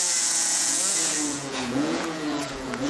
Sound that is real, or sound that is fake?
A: fake